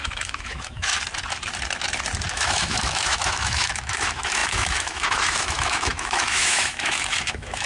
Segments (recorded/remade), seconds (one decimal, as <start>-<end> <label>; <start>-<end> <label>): 0.0-0.9 remade; 0.9-2.3 recorded; 2.3-7.7 remade